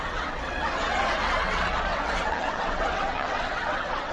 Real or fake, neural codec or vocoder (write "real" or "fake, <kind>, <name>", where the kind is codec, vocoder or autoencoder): fake, vocoder, WaveNeXt